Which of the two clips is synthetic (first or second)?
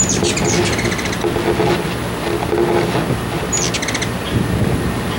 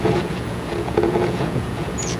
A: second